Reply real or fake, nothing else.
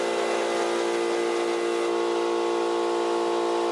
real